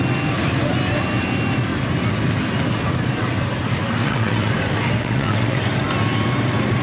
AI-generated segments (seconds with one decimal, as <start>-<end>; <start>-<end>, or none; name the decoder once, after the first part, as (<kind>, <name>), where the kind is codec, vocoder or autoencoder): 4.0-4.5 (vocoder, WaveNeXt); 5.0-5.6